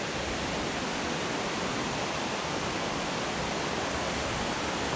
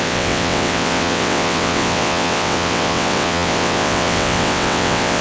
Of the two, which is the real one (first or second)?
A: first